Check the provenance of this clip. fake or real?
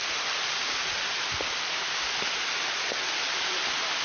real